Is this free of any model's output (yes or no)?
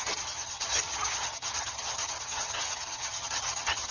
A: no